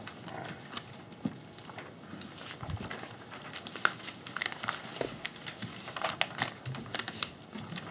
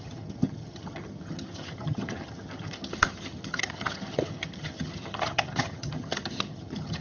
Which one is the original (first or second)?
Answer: first